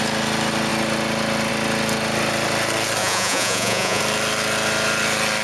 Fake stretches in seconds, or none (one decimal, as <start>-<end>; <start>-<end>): 3.0-4.0